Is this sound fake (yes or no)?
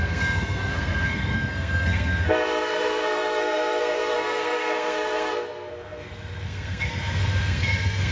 yes